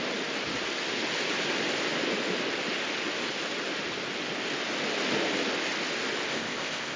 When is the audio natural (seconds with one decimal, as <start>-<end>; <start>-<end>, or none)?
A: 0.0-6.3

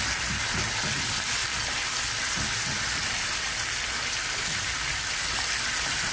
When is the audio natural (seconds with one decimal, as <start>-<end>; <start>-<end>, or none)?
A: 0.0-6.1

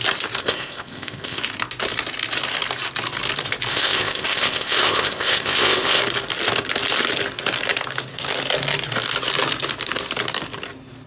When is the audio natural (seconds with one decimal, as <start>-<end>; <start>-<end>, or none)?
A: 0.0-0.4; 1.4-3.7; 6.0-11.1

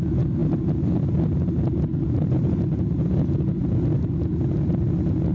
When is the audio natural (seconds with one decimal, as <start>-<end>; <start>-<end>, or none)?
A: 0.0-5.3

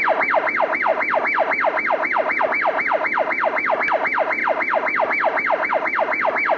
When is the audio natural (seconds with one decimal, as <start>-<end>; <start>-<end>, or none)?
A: 0.0-6.6

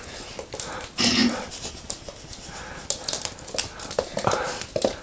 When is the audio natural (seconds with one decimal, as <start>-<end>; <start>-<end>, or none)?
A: 0.0-5.0